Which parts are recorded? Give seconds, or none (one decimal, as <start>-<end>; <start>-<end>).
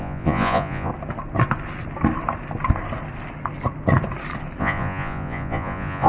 0.9-4.6